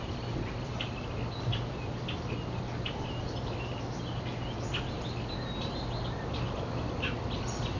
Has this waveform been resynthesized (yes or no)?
no